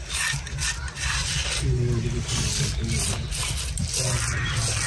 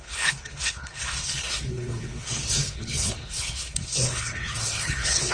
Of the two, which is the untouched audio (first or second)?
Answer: first